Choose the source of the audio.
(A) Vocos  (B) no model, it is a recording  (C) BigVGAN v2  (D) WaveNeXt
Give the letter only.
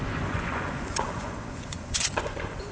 A